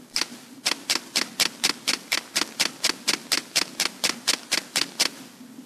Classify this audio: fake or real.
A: real